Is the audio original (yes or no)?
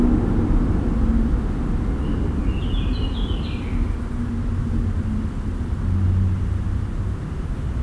yes